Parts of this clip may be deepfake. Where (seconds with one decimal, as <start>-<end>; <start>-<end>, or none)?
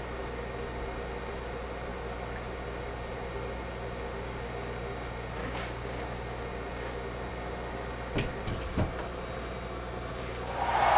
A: 5.4-6.0